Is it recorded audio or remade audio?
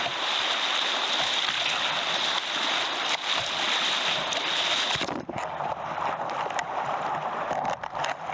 recorded